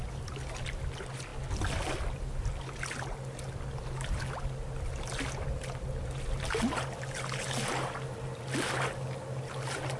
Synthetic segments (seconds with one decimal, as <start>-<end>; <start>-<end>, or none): none